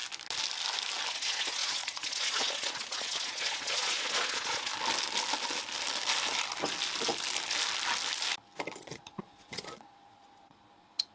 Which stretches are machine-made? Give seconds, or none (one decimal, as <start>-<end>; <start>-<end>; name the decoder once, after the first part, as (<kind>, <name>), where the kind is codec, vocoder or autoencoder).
1.1-4.7 (vocoder, Vocos); 8.8-11.1